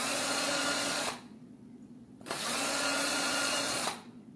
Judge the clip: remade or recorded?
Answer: remade